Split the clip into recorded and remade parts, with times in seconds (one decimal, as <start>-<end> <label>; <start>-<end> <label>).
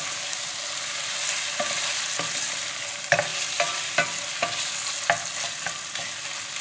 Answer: 0.0-6.6 recorded